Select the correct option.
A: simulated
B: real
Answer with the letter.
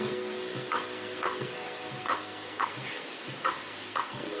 A